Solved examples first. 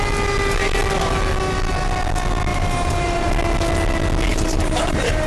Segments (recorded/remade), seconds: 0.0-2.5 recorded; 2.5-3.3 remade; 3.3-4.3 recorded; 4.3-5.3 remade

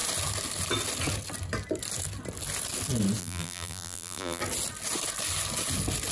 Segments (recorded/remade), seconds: 0.0-3.2 recorded; 3.2-4.4 remade; 4.4-6.1 recorded

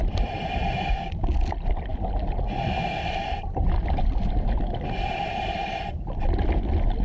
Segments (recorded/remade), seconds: 0.0-1.9 remade; 1.9-2.9 recorded; 2.9-7.0 remade

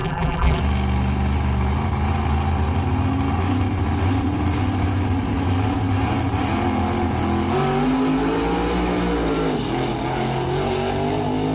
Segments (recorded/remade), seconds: 0.0-0.6 remade; 0.6-11.5 recorded

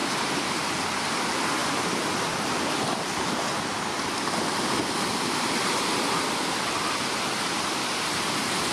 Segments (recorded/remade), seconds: 0.0-0.8 remade; 0.8-1.6 recorded; 1.6-2.1 remade; 2.1-5.1 recorded; 5.1-6.2 remade; 6.2-8.7 recorded

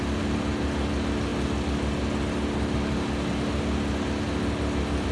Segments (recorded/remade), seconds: 0.0-5.1 recorded

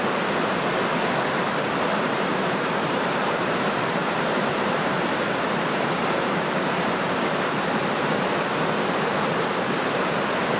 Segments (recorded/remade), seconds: 0.0-2.3 recorded; 2.3-7.6 remade; 7.6-10.6 recorded